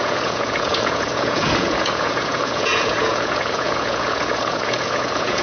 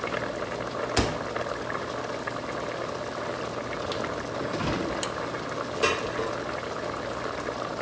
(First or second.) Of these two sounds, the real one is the second